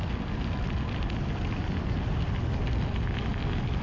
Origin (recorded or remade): recorded